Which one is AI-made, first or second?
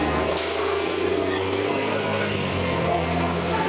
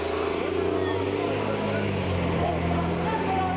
first